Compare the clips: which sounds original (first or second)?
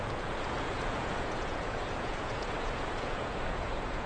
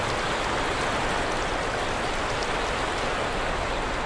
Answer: second